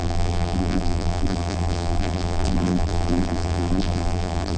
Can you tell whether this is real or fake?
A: fake